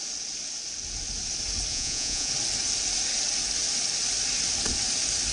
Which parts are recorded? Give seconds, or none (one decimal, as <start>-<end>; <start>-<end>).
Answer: 0.0-1.7; 2.3-5.3